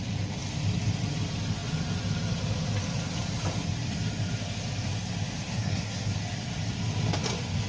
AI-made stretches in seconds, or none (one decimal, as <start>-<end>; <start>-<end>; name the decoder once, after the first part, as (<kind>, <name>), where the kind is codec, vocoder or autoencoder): 5.5-6.2 (codec, SNAC)